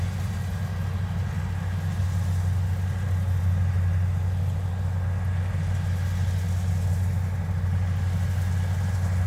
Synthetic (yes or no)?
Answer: no